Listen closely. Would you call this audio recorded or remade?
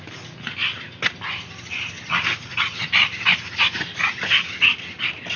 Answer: recorded